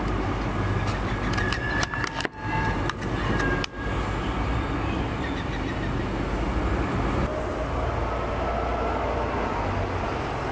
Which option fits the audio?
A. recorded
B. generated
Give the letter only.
A